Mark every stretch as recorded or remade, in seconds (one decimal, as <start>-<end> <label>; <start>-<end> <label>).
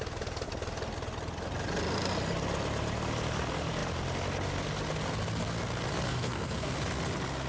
0.0-6.1 recorded; 6.1-6.7 remade; 6.7-7.5 recorded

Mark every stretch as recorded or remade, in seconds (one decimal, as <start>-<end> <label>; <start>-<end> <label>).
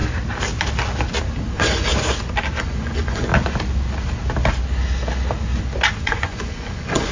0.0-1.5 recorded; 1.5-1.9 remade; 1.9-2.6 recorded; 2.6-3.3 remade; 3.3-5.9 recorded; 5.9-7.1 remade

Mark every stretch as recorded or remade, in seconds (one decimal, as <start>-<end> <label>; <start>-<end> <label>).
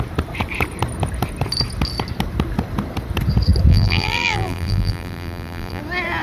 0.0-3.7 recorded; 3.7-5.8 remade; 5.8-6.2 recorded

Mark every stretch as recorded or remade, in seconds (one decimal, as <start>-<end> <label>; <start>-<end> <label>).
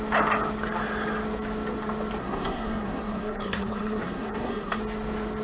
0.0-2.2 recorded; 2.2-4.8 remade; 4.8-5.4 recorded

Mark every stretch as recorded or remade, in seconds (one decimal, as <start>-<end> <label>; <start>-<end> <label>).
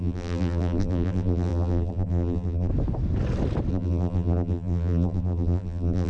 0.0-2.7 remade; 2.7-3.7 recorded; 3.7-6.1 remade